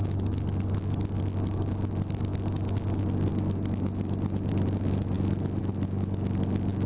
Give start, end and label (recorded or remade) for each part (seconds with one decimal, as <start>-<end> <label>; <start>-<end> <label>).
0.0-6.9 recorded